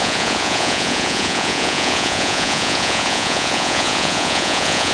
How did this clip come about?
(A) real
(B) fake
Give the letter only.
B